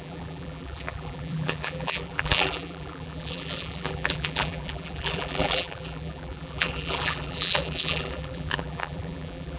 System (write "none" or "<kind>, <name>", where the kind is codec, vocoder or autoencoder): vocoder, BigVGAN v2